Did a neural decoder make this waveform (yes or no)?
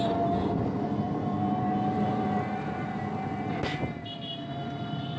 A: no